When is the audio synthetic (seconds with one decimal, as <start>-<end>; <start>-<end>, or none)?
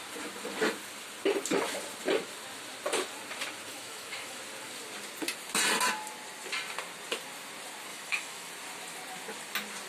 3.7-4.4; 7.9-8.5